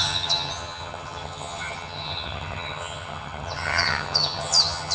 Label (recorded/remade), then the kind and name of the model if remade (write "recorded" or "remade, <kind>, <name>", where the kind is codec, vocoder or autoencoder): remade, vocoder, HiFi-GAN